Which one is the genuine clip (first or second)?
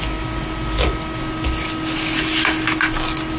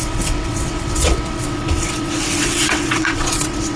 first